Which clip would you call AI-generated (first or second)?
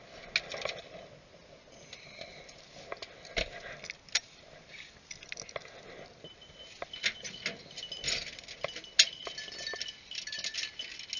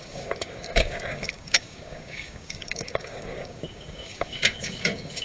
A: second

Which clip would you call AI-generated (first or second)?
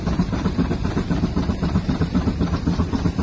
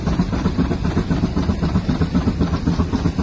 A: first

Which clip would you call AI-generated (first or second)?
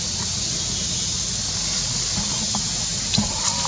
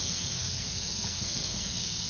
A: second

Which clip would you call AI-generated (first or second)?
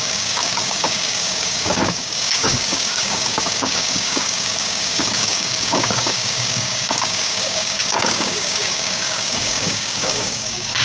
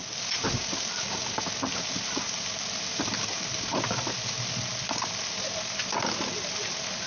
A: first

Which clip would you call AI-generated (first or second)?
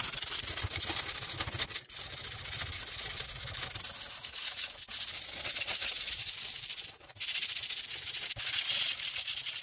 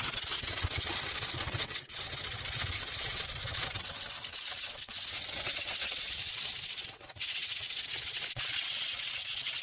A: second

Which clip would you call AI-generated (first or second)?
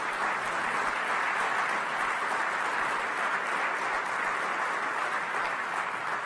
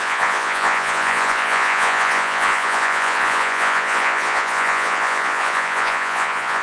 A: second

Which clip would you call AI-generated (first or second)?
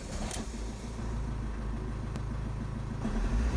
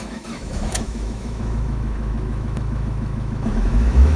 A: second